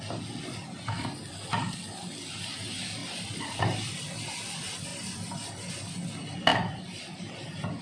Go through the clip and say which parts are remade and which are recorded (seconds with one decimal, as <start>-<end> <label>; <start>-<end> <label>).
0.0-3.0 recorded; 3.0-4.2 remade; 4.2-6.5 recorded; 6.5-7.2 remade; 7.2-7.8 recorded